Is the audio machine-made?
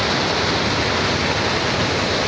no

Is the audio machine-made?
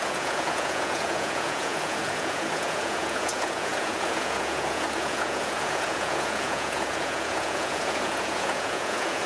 yes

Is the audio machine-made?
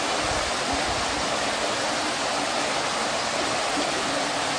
no